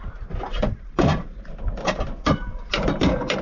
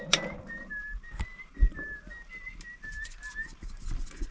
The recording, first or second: second